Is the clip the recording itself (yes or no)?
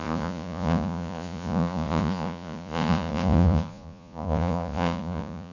no